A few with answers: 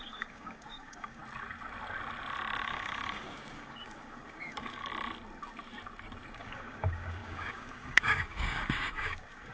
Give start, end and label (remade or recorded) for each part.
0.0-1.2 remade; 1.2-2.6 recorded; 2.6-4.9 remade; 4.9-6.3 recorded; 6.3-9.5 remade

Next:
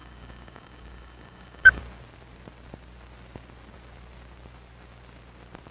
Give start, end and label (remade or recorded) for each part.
0.0-1.8 remade; 1.8-5.7 recorded

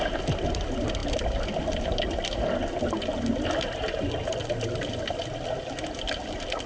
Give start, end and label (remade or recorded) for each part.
0.0-6.7 recorded

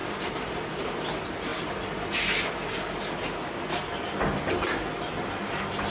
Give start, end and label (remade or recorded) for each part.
0.0-5.9 recorded